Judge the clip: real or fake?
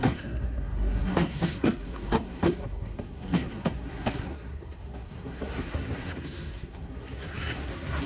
fake